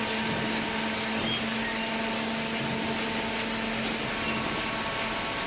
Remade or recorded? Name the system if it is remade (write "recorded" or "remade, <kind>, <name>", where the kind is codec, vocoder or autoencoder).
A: recorded